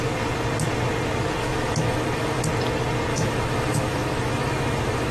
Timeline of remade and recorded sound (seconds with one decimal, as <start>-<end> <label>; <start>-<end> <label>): 0.0-1.4 recorded; 1.4-2.4 remade; 2.4-3.1 recorded; 3.1-5.1 remade